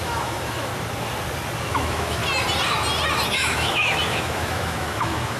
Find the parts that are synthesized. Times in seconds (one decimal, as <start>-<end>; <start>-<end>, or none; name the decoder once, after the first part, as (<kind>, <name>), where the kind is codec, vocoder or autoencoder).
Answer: 0.0-0.7 (autoencoder, DAC-VAE); 1.7-2.2; 3.3-5.4